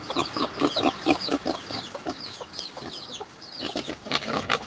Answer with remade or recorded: remade